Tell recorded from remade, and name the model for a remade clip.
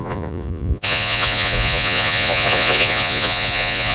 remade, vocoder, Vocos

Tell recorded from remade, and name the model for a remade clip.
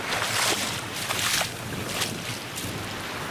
recorded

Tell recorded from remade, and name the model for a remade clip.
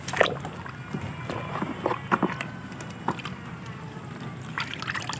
recorded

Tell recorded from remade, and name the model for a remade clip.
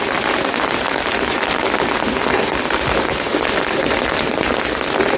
recorded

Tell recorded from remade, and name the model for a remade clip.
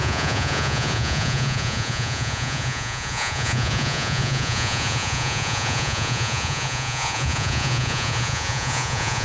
remade, vocoder, Vocos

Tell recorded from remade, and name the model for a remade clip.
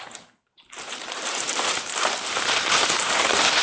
remade, vocoder, BigVGAN v2